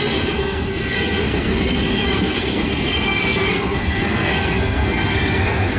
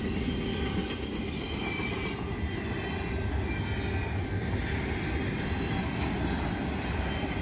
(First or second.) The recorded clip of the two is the second